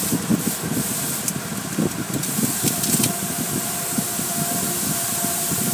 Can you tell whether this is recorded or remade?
recorded